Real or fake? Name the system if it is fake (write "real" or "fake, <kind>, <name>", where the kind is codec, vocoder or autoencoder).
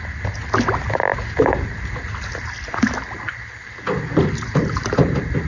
real